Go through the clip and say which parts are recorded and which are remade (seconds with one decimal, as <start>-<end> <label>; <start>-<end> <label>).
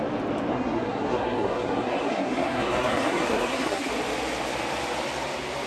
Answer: 0.0-0.5 recorded; 0.5-3.9 remade; 3.9-5.7 recorded